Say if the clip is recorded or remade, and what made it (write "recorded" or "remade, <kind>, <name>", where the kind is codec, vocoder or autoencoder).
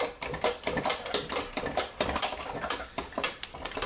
remade, vocoder, BigVGAN v2